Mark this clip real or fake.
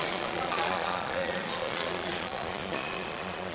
fake